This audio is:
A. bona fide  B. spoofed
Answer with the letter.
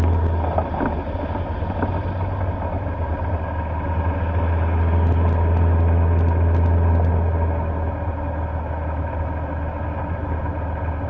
A